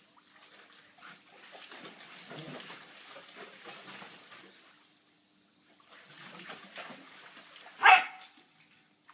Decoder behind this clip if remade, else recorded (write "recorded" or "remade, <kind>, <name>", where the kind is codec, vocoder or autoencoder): recorded